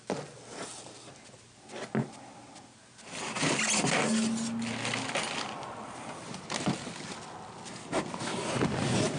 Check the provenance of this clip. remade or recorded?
recorded